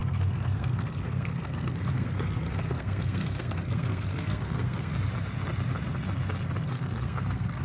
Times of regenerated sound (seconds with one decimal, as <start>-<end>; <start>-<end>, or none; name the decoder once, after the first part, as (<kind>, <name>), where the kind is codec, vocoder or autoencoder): 0.0-4.9 (codec, SNAC); 6.7-7.6